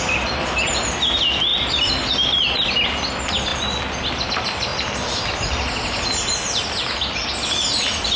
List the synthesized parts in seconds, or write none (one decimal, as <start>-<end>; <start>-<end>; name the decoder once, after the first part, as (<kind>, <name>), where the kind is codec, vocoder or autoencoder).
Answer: none